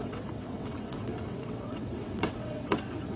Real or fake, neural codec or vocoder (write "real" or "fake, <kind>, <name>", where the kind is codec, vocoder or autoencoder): fake, vocoder, WaveNeXt